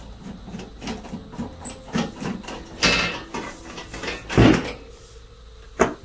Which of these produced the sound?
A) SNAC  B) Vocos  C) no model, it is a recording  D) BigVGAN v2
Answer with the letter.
C